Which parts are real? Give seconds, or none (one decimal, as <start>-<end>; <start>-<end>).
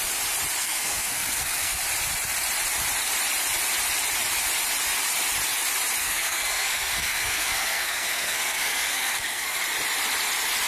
0.0-0.6; 1.8-6.0; 9.6-10.7